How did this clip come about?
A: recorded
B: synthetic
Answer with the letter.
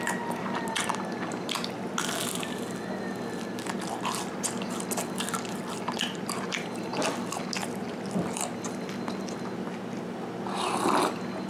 A